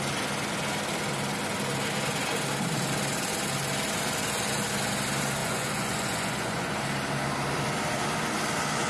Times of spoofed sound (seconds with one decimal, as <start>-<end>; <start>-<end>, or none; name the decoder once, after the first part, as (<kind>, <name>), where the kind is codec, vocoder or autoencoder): 5.4-6.8 (vocoder, Vocos)